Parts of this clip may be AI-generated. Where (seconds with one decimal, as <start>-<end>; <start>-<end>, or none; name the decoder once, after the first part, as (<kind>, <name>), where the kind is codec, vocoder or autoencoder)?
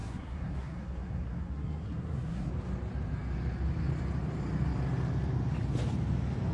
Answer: 0.0-2.5 (codec, SNAC)